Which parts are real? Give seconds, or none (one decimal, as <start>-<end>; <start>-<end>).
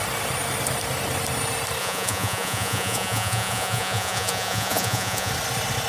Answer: 0.0-1.8; 5.3-5.9